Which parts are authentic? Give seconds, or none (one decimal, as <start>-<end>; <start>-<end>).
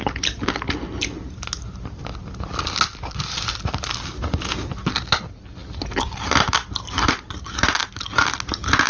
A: 0.0-8.9